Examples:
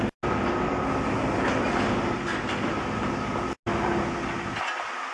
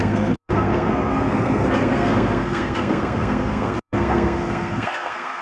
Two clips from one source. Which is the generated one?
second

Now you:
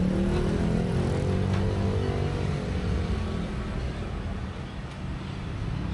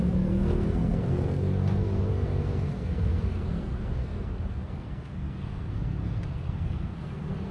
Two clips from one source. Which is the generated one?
second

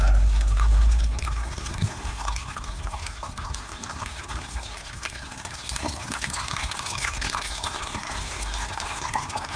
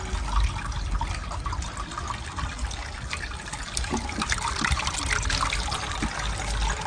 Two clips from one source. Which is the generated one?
first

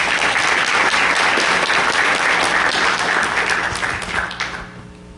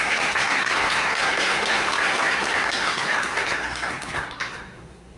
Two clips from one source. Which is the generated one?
second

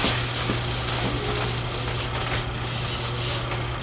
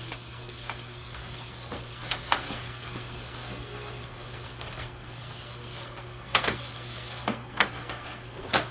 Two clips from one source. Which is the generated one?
second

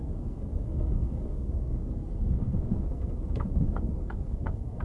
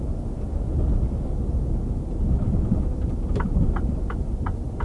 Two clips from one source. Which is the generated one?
first